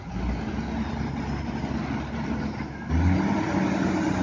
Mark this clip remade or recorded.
recorded